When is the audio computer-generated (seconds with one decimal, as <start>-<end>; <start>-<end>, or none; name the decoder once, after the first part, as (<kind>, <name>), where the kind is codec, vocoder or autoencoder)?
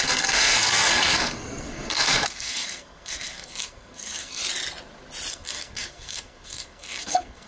0.0-4.4 (codec, SNAC); 5.3-7.5